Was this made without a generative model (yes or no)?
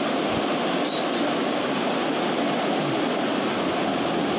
yes